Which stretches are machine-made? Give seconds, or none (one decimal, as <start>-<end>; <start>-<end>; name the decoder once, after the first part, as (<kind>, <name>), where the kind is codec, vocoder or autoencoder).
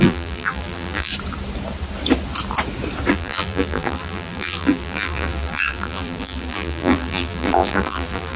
0.0-1.1 (vocoder, BigVGAN v2); 3.1-8.4